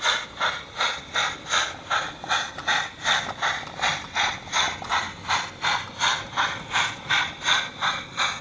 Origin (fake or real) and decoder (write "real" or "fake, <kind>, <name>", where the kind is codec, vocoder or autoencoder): real